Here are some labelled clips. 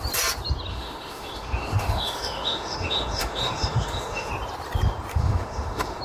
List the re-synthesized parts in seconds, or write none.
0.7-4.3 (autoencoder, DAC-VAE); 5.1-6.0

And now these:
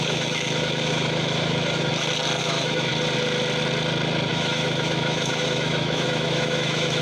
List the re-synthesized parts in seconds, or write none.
0.0-1.9 (autoencoder, DAC-VAE); 2.4-2.9; 4.3-7.0

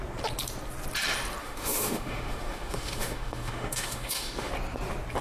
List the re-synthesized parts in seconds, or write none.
1.4-4.5 (autoencoder, DAC-VAE)

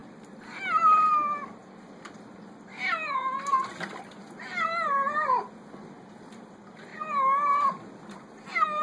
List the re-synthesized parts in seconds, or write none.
none

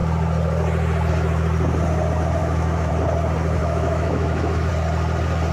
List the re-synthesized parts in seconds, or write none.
2.4-2.9 (autoencoder, DAC-VAE); 3.6-4.7